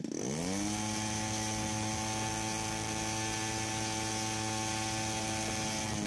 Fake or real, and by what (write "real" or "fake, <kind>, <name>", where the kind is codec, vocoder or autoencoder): real